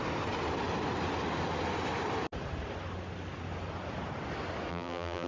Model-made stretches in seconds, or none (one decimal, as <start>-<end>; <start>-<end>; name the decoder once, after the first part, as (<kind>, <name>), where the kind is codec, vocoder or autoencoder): 4.7-5.3 (vocoder, BigVGAN v2)